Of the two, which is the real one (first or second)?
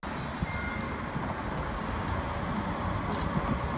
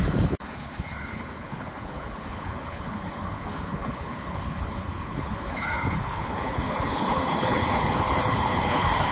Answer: first